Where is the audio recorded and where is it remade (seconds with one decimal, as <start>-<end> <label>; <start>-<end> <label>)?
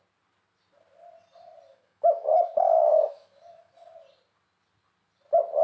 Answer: 0.0-1.7 recorded; 1.7-3.7 remade; 3.7-5.6 recorded